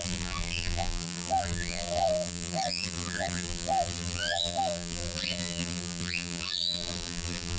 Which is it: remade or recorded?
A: remade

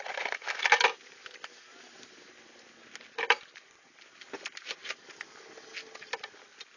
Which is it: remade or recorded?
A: recorded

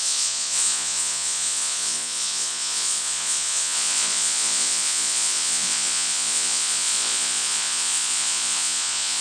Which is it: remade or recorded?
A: remade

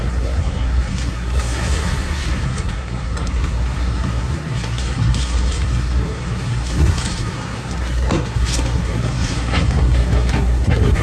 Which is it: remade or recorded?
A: remade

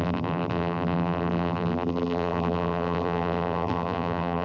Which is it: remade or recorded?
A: remade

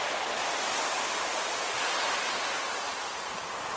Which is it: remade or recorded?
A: recorded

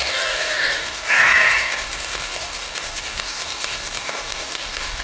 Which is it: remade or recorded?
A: remade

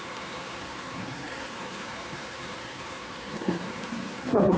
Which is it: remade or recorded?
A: remade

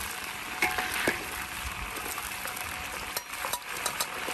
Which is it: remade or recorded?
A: recorded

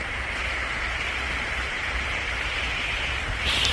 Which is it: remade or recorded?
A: remade